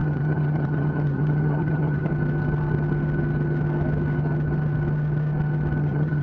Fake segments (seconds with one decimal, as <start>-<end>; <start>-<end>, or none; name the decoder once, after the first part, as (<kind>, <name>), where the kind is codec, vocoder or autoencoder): 0.0-2.1 (vocoder, HiFi-GAN); 5.8-6.2